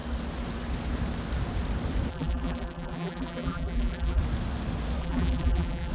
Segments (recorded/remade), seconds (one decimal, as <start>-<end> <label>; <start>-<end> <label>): 0.0-2.1 recorded; 2.1-4.2 remade; 4.2-5.0 recorded; 5.0-5.9 remade